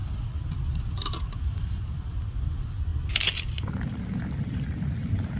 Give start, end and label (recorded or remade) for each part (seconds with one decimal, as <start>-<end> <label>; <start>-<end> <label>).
0.0-5.4 recorded